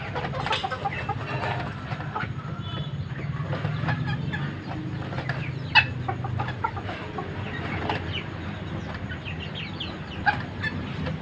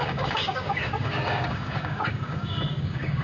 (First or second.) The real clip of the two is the first